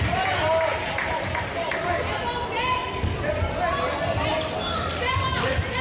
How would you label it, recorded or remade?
recorded